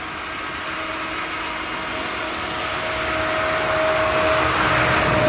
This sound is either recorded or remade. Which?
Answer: recorded